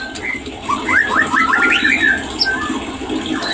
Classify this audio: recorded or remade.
recorded